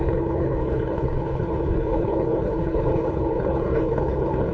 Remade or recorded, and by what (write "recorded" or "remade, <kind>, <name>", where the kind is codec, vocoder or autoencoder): remade, codec, HILCodec